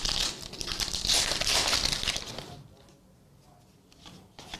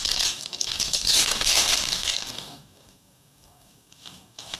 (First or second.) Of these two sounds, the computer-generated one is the second